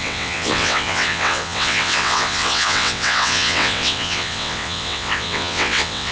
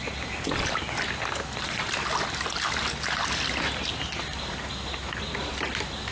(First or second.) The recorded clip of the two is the second